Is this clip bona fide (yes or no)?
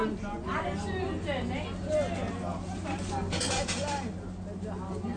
yes